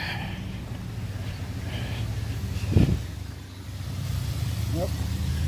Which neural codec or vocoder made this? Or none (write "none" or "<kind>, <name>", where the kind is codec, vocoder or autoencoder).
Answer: none